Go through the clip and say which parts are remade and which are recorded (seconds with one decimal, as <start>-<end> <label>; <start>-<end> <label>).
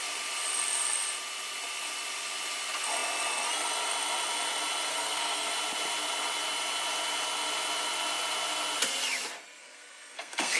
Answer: 0.0-4.9 recorded; 4.9-5.5 remade; 5.5-9.6 recorded; 9.6-10.6 remade